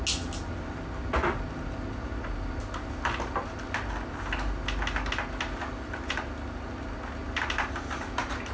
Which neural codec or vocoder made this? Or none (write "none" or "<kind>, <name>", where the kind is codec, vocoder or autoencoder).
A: none